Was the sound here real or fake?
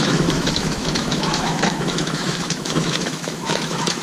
fake